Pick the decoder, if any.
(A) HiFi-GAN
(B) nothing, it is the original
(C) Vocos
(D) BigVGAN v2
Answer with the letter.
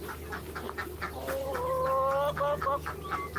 B